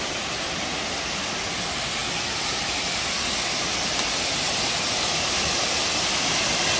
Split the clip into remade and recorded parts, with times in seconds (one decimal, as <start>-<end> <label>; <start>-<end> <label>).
0.0-6.8 recorded